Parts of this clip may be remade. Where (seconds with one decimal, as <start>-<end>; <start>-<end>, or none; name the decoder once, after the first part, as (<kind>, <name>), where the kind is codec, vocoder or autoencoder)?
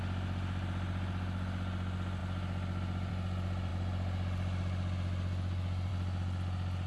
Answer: none